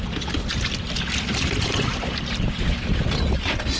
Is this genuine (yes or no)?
yes